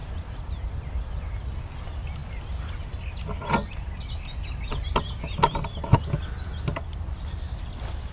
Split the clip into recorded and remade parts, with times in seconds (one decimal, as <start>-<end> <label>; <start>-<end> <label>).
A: 0.0-8.1 recorded